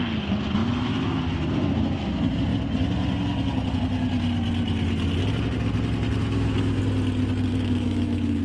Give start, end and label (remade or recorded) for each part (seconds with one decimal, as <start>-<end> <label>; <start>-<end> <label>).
0.0-0.6 recorded; 0.6-1.2 remade; 1.2-6.2 recorded; 6.2-6.8 remade; 6.8-7.5 recorded; 7.5-8.4 remade